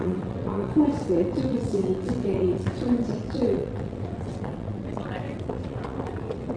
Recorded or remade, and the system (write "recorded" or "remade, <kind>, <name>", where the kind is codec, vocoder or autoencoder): remade, vocoder, WaveNeXt